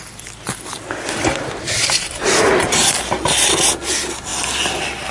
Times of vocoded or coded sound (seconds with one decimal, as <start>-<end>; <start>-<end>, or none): none